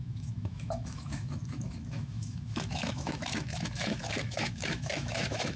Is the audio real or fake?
fake